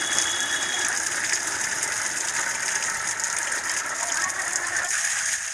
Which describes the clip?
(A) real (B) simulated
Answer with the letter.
A